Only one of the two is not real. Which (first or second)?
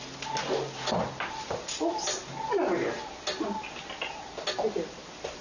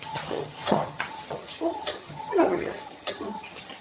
second